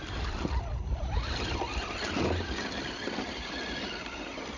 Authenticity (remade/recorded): recorded